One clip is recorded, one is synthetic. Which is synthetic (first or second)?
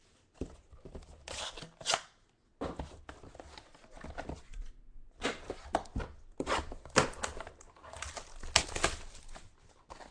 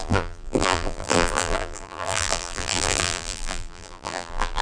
second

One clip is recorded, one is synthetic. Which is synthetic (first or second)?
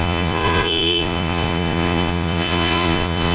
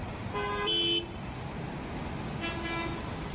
first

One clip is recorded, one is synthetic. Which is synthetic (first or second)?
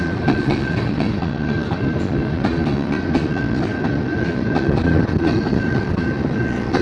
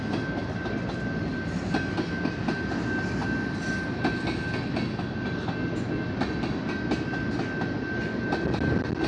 first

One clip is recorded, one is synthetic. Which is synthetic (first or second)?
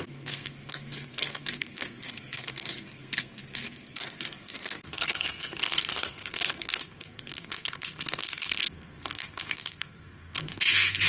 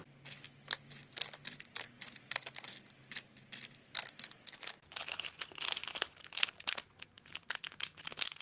first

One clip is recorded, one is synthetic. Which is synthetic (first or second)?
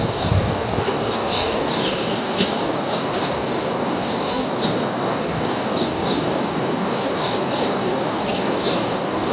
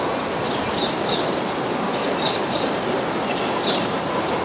first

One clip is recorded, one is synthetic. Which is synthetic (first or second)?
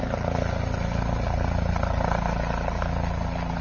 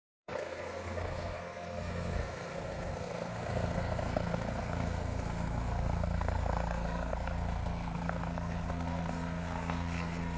second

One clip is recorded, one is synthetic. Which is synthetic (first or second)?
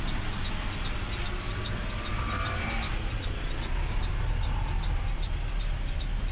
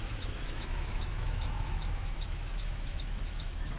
second